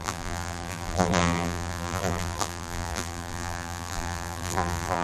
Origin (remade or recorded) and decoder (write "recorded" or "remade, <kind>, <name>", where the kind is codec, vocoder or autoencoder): remade, vocoder, BigVGAN v2